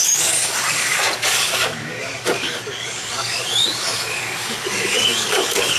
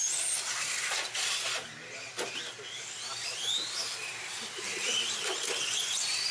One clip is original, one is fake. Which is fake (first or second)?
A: first